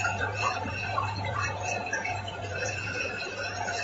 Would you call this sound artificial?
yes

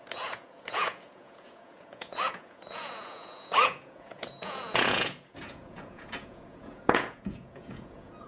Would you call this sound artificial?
yes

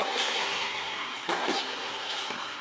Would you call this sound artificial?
yes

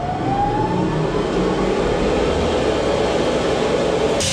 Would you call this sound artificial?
no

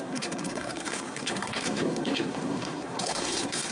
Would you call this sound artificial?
yes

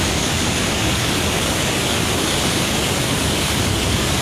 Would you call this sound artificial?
yes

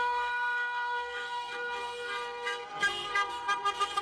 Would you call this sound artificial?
yes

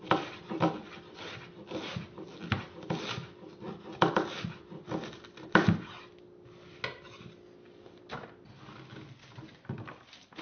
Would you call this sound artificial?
no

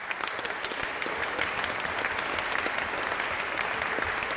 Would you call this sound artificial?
no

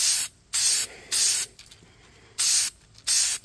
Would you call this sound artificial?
no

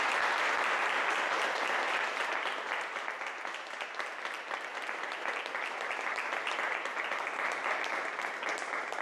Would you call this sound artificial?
no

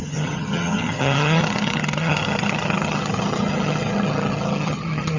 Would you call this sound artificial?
yes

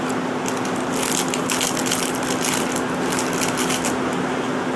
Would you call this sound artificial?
no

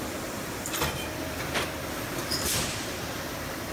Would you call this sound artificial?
yes